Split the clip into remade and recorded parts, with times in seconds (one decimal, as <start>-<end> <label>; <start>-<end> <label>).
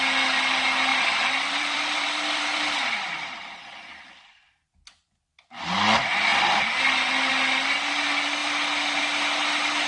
0.0-0.9 recorded; 0.9-3.1 remade; 3.1-9.9 recorded